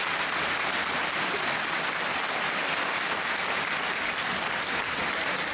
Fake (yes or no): no